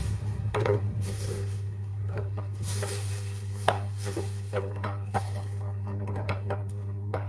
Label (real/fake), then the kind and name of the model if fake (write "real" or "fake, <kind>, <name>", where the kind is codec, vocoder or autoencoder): fake, codec, SNAC